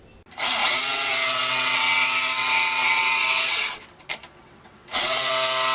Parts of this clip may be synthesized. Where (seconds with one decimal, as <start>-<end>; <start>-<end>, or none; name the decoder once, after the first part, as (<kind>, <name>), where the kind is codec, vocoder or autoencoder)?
0.6-3.8 (vocoder, WaveNeXt); 4.4-5.3